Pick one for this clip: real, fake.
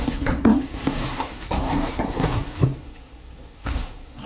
fake